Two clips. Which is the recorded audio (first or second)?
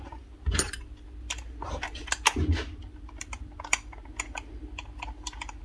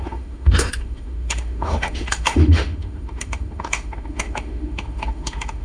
first